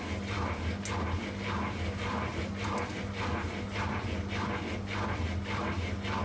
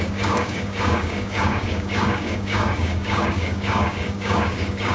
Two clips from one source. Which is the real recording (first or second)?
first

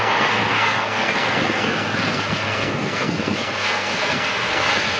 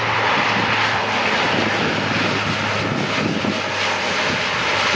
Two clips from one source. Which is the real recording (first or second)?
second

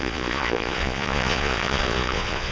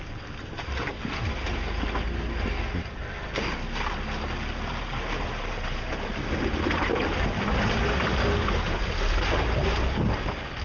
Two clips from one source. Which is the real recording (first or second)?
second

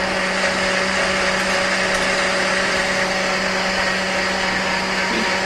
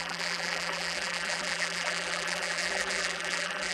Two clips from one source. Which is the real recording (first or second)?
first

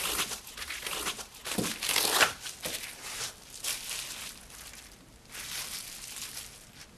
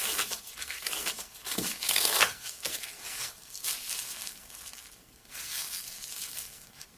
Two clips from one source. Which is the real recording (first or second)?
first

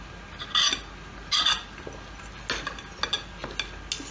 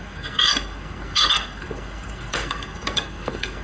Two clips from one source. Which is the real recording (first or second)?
first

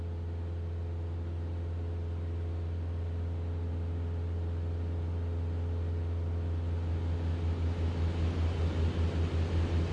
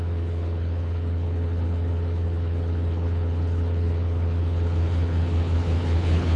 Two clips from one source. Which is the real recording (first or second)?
first